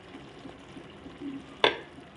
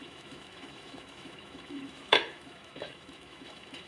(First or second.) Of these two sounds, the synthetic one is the second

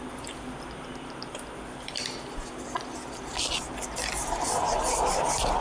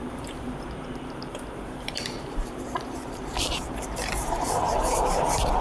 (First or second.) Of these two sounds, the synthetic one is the second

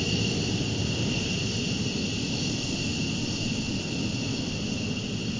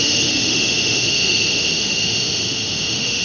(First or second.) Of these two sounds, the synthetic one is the second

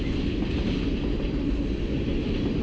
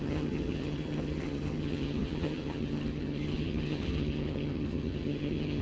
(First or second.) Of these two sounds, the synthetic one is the second